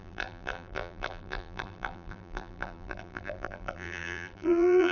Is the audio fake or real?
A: fake